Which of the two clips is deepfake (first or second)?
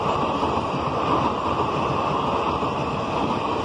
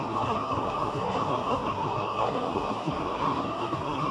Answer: second